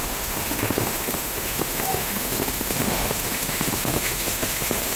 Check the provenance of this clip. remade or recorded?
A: remade